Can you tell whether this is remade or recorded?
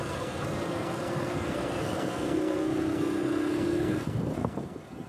remade